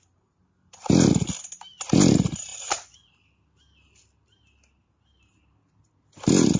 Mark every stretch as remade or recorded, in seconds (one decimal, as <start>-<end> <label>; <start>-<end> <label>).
0.0-2.5 recorded; 2.5-3.1 remade; 3.1-6.6 recorded